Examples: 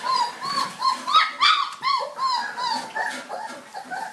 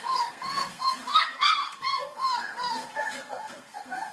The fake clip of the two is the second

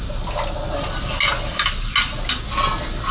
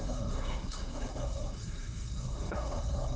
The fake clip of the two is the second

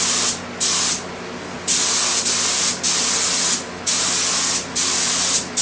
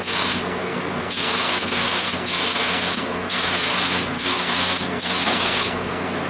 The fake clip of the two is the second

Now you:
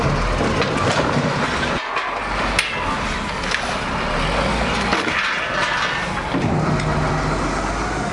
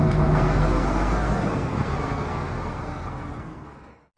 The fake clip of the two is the second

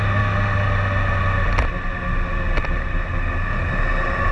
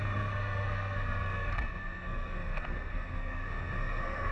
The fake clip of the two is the second